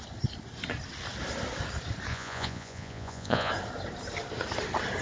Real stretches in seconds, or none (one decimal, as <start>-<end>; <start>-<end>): 0.0-2.1; 3.5-5.0